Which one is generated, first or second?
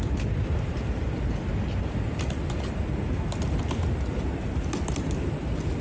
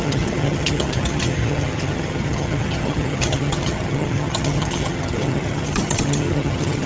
second